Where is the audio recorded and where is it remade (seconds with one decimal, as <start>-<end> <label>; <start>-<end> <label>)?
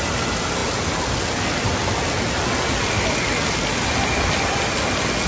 0.0-5.3 recorded